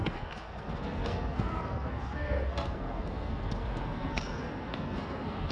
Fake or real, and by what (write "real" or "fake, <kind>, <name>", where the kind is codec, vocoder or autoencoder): fake, codec, SNAC